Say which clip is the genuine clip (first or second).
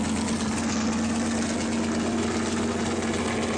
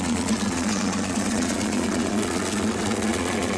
first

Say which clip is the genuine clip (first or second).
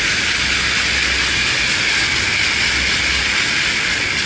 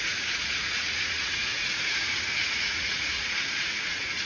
first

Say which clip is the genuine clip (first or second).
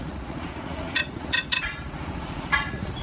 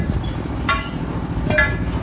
second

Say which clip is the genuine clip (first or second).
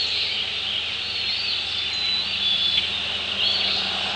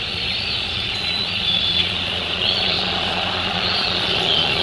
first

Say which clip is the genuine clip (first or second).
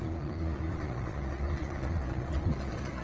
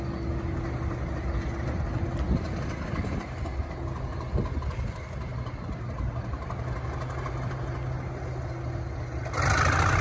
second